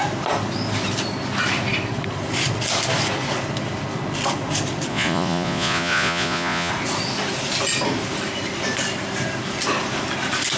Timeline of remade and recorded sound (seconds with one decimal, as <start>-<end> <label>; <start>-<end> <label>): 0.0-4.9 recorded; 4.9-6.7 remade; 6.7-10.6 recorded